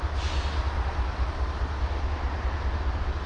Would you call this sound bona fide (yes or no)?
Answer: yes